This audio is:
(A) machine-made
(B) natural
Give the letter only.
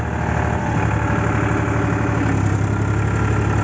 B